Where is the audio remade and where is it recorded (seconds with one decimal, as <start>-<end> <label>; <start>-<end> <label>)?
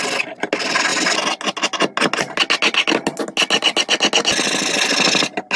0.0-5.6 recorded